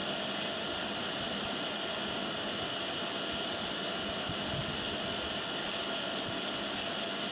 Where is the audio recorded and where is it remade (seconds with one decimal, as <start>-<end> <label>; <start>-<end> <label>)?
0.0-7.3 recorded